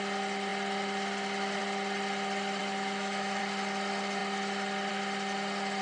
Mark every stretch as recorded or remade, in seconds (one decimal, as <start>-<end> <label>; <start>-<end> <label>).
0.0-2.6 recorded; 2.6-3.4 remade; 3.4-5.8 recorded